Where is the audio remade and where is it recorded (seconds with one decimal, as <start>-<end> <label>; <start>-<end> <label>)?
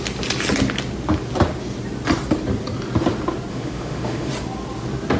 0.0-3.5 recorded; 3.5-4.3 remade; 4.3-5.2 recorded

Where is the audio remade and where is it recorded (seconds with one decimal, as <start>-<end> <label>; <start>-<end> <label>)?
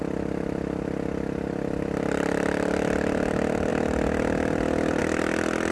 0.0-5.7 recorded